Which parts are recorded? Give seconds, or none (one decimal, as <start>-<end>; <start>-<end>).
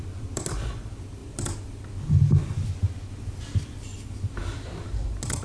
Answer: 2.4-3.1; 3.9-4.7